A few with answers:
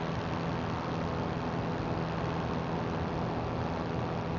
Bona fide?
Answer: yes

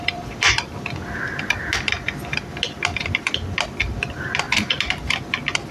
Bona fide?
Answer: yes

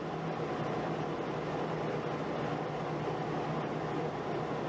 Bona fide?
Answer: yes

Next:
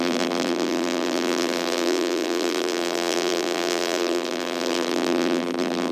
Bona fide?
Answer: no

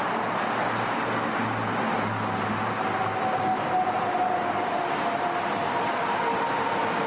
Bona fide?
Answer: yes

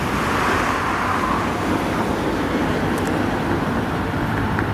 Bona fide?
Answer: no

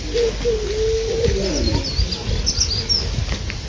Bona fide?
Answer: yes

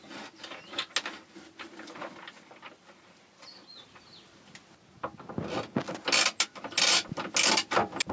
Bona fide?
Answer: yes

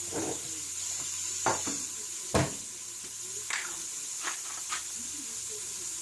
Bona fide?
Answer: yes